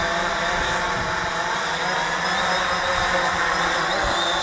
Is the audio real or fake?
real